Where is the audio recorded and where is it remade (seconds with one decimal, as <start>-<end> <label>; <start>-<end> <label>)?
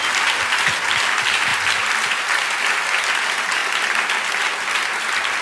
0.0-5.4 recorded